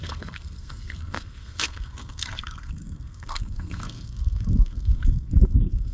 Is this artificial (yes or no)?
yes